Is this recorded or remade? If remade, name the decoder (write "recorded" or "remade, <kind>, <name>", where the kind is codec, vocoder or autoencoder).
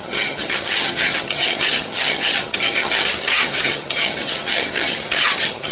remade, vocoder, HiFi-GAN